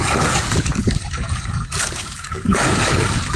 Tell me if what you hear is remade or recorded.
remade